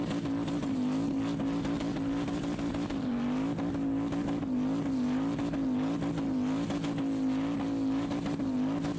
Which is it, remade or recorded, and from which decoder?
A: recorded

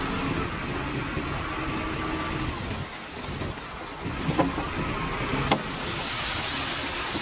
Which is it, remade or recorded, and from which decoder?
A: recorded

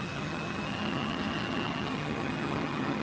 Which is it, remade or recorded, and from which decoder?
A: remade, vocoder, HiFi-GAN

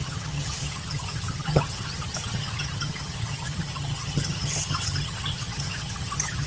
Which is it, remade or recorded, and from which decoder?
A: remade, vocoder, HiFi-GAN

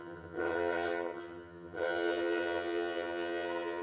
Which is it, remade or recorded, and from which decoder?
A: remade, vocoder, HiFi-GAN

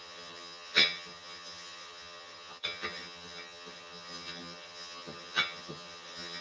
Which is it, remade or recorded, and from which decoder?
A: remade, vocoder, HiFi-GAN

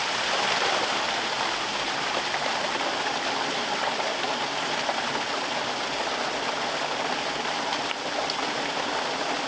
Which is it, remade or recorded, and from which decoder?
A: recorded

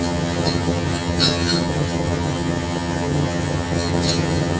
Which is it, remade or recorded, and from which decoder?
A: remade, vocoder, HiFi-GAN